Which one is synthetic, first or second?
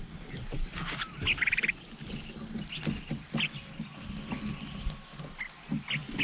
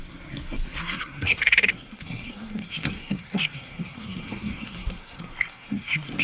second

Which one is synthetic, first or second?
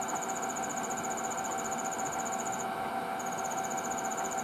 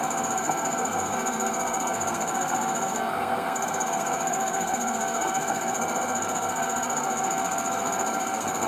second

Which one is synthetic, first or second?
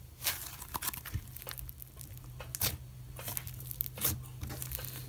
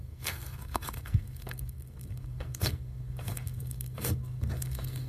second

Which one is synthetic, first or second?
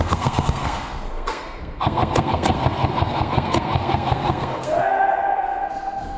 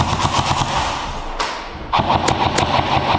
first